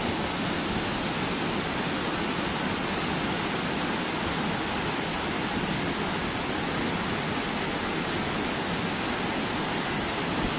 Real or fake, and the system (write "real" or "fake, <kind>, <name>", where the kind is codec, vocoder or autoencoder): real